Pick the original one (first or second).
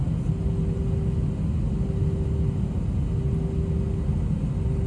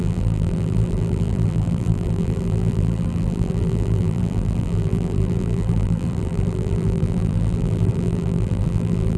first